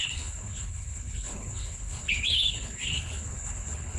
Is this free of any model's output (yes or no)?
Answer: no